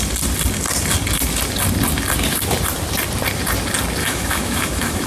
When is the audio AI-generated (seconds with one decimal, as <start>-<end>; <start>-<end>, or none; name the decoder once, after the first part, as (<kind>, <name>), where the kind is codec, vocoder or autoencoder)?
4.0-5.1 (autoencoder, DAC-VAE)